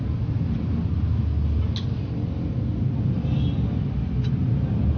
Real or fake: real